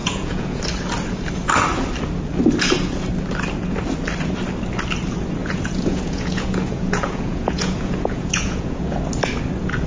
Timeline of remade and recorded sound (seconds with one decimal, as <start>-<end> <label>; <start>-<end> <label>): 0.0-0.6 remade; 0.6-5.4 recorded; 5.4-9.0 remade; 9.0-9.9 recorded